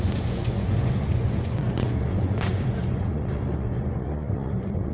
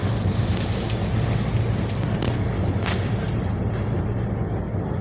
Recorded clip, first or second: second